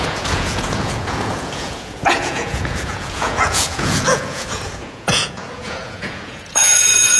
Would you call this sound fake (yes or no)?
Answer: yes